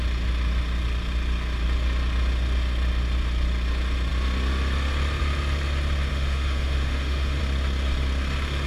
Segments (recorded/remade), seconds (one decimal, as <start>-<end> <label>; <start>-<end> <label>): 0.0-6.1 recorded; 6.1-7.4 remade; 7.4-8.7 recorded